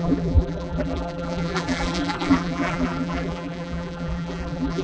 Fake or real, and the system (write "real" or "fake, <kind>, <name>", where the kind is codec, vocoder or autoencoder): fake, vocoder, BigVGAN v2